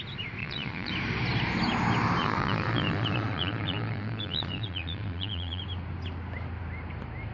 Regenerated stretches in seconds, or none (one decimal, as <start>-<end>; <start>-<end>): 0.4-0.9; 2.2-5.6